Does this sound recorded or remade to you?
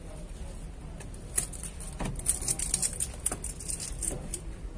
recorded